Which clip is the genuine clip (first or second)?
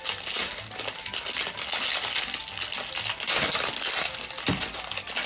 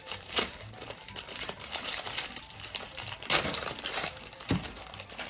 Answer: first